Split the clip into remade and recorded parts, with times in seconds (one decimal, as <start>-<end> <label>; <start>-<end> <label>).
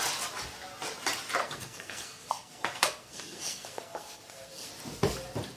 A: 0.0-1.4 recorded; 1.4-4.7 remade; 4.7-5.6 recorded